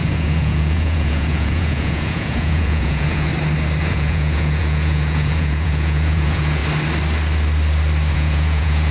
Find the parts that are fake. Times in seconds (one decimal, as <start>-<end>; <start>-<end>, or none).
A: 0.0-3.3; 3.8-6.6; 8.1-8.9